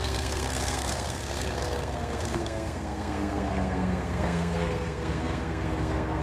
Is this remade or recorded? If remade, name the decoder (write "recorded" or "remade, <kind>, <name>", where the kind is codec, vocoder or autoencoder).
remade, codec, SNAC